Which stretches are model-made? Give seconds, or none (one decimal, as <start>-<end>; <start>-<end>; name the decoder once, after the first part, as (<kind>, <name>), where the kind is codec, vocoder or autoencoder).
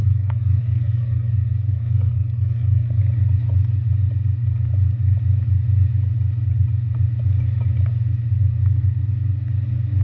0.0-3.0 (codec, SNAC)